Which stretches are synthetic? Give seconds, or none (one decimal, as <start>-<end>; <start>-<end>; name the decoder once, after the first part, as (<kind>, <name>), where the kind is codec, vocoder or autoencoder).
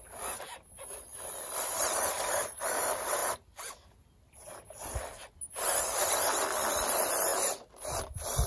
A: 0.0-3.2 (vocoder, BigVGAN v2); 5.8-7.3; 8.0-8.5